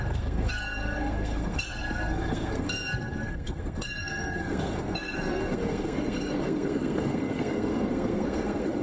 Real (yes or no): no